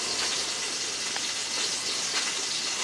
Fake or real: real